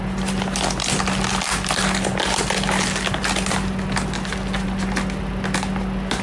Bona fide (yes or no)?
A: yes